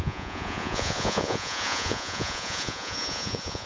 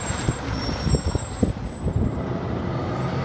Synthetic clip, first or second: first